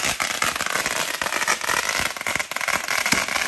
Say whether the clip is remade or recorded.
recorded